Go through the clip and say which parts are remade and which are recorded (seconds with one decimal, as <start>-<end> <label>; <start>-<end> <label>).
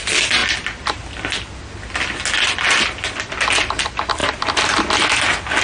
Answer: 0.0-5.6 recorded